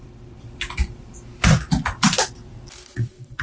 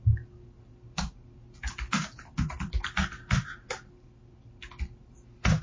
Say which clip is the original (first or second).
second